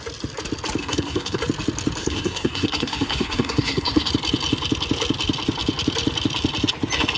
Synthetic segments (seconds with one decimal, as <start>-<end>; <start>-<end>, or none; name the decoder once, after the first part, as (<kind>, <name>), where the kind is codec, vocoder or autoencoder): 0.8-1.4 (codec, SNAC); 2.0-4.1